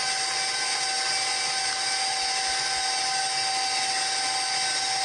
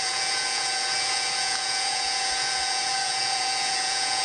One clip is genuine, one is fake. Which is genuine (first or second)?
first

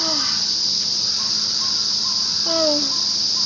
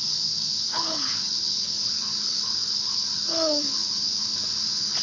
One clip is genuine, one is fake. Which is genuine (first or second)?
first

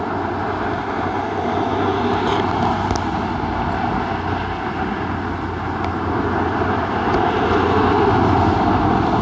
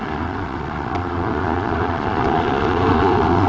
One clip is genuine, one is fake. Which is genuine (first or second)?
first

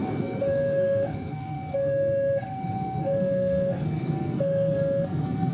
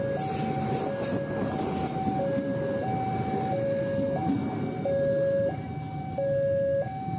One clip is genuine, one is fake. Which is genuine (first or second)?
second